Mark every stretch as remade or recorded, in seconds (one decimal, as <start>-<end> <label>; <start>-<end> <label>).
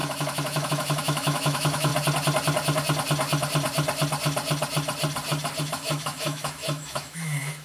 0.0-1.9 remade; 1.9-5.6 recorded; 5.6-7.6 remade